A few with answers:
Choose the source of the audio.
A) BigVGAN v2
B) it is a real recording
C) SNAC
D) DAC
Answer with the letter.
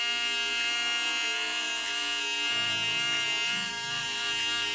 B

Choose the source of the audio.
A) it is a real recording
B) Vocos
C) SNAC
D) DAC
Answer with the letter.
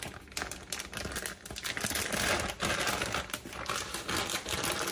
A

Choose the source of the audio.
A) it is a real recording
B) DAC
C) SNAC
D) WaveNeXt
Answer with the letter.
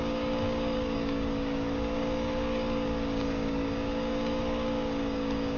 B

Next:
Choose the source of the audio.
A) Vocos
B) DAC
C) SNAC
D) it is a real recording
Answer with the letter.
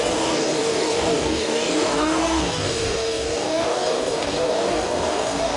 B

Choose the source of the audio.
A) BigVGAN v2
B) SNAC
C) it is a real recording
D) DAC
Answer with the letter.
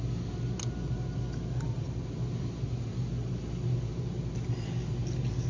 C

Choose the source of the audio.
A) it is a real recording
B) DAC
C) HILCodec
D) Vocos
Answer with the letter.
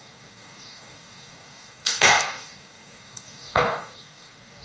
B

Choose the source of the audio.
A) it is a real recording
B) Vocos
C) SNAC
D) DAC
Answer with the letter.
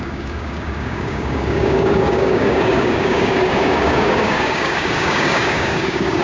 D